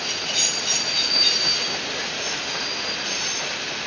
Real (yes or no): yes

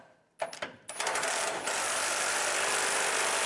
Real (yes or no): yes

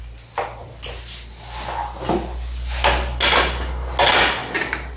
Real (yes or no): yes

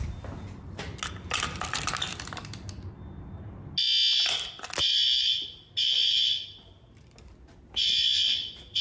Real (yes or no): yes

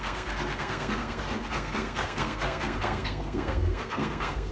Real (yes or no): no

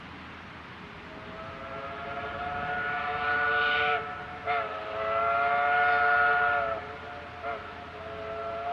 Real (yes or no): yes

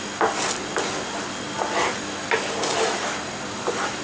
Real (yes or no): yes